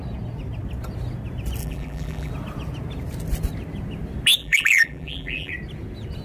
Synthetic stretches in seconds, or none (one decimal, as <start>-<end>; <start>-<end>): 1.6-2.3; 4.4-5.5